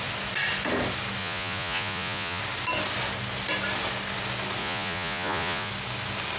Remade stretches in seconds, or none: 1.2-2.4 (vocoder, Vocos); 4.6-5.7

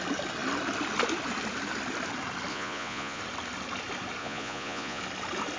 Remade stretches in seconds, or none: 2.5-3.2 (vocoder, Vocos); 4.2-5.0

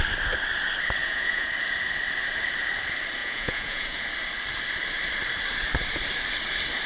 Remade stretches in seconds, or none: 1.0-1.5 (vocoder, Vocos); 3.2-4.1

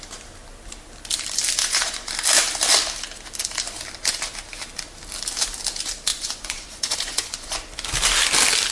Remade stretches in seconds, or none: 1.6-2.1 (vocoder, Vocos); 6.1-7.6

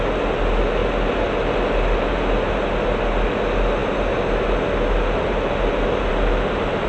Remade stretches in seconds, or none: none